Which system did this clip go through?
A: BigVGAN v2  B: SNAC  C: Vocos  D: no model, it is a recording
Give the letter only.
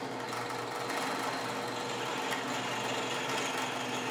D